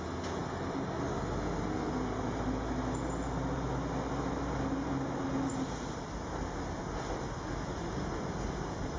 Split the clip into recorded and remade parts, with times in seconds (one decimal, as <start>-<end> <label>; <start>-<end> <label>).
0.0-9.0 recorded